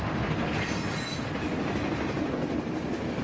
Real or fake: real